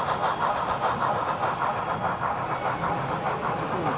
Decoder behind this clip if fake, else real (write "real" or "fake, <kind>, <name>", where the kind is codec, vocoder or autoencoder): real